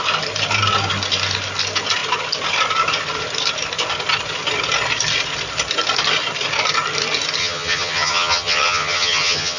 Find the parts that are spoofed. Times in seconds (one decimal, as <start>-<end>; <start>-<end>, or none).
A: 7.4-9.6